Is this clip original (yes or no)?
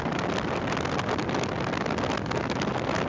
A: yes